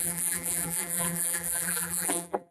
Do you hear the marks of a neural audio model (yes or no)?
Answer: yes